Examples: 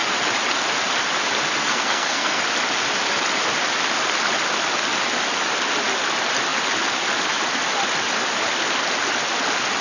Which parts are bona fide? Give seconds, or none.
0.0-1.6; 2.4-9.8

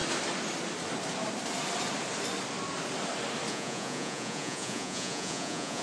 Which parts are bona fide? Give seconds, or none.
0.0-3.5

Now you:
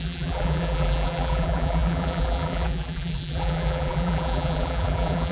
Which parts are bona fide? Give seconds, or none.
none